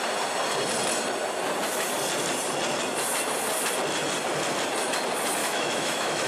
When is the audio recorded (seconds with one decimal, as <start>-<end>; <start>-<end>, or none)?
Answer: 0.0-5.4